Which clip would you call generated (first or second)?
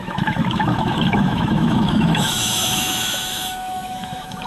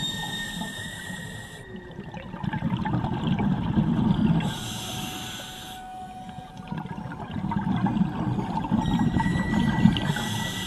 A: first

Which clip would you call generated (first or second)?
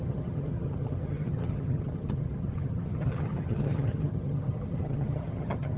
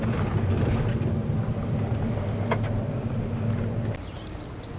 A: first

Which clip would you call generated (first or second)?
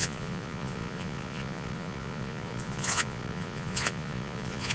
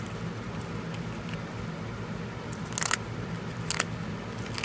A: first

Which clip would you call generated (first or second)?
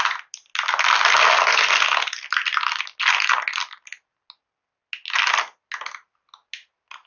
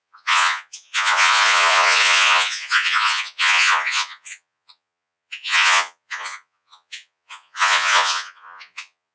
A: second